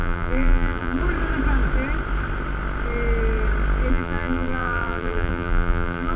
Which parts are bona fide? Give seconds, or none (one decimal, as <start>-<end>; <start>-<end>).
1.0-3.9